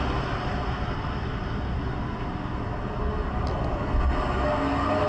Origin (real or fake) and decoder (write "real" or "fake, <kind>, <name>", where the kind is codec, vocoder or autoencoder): real